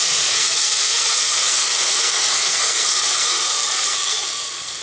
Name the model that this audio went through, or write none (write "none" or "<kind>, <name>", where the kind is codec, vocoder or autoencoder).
codec, SNAC